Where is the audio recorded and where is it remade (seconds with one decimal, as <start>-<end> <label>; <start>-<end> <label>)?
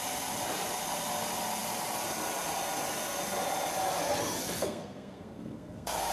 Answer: 0.0-4.6 recorded; 4.6-6.1 remade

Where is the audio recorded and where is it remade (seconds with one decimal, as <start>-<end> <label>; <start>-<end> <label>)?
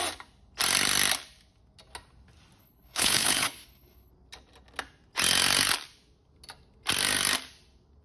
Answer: 0.0-2.6 recorded; 2.6-4.1 remade; 4.1-8.0 recorded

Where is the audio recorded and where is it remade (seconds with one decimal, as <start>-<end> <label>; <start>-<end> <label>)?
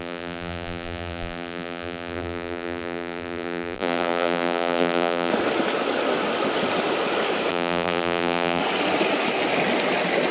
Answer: 0.0-5.3 remade; 5.3-7.5 recorded; 7.5-8.6 remade; 8.6-10.3 recorded